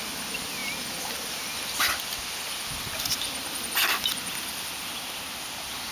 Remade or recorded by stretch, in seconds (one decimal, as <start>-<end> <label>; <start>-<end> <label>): 0.0-5.9 recorded

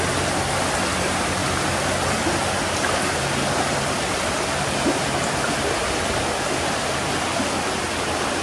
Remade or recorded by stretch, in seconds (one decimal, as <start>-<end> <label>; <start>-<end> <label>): 0.0-8.4 recorded

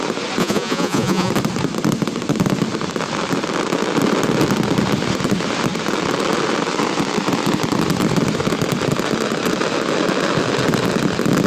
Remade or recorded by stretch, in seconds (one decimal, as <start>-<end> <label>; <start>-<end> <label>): 0.0-0.4 recorded; 0.4-1.3 remade; 1.3-11.5 recorded

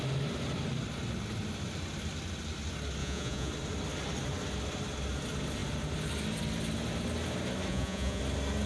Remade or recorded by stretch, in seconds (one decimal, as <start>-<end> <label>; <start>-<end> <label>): 0.0-3.0 recorded; 3.0-3.5 remade; 3.5-7.7 recorded; 7.7-8.2 remade; 8.2-8.7 recorded

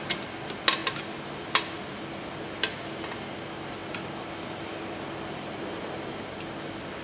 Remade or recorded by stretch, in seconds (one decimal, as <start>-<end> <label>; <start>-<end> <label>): 0.0-7.0 recorded

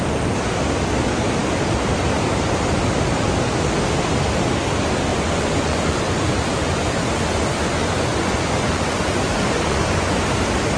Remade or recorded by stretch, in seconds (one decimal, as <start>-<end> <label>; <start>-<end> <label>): 0.0-5.1 recorded; 5.1-10.2 remade; 10.2-10.8 recorded